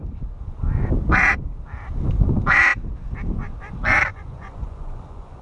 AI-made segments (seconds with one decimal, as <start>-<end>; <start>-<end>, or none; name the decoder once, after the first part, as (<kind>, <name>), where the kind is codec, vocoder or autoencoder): 4.1-5.4 (vocoder, Vocos)